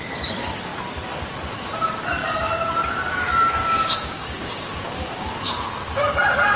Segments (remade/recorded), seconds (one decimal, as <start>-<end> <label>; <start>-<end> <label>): 0.0-3.6 recorded; 3.6-5.3 remade; 5.3-6.6 recorded